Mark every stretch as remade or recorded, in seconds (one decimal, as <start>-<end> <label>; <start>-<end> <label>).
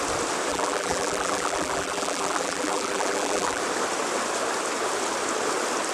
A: 0.0-0.5 recorded; 0.5-3.6 remade; 3.6-5.9 recorded